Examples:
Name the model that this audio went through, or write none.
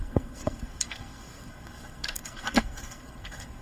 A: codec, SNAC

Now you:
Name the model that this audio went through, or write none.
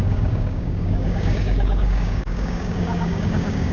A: codec, DAC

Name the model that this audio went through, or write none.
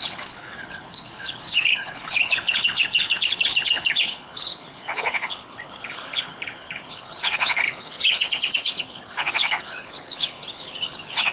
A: codec, HILCodec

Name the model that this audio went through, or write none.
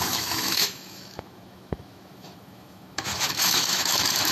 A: autoencoder, DAC-VAE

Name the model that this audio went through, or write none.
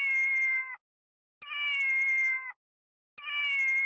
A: none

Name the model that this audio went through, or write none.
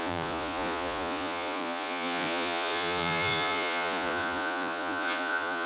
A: vocoder, Vocos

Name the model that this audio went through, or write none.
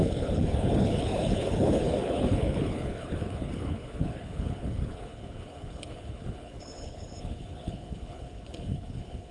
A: codec, HILCodec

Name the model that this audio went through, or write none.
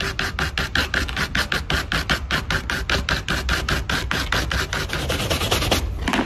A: none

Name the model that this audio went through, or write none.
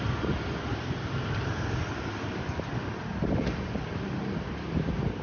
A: none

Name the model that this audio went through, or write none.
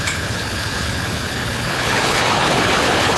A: codec, HILCodec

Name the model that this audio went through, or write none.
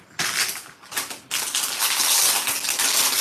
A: none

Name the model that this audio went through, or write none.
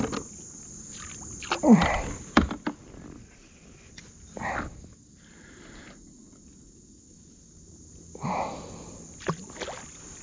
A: none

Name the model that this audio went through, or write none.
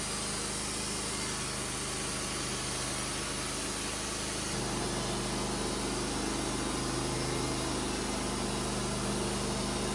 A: none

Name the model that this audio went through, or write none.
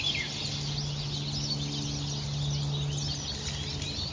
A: none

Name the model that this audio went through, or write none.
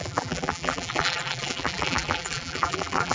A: vocoder, BigVGAN v2